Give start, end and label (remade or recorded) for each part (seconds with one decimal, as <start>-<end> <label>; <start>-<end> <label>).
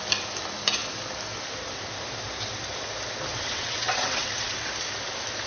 0.0-3.3 recorded; 3.3-4.7 remade; 4.7-5.5 recorded